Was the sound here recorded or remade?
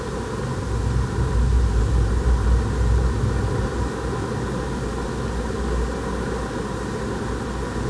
recorded